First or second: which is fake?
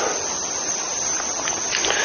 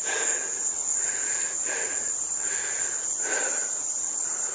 second